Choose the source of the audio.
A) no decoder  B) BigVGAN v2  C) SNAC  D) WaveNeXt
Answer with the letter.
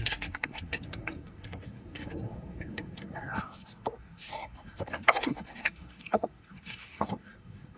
C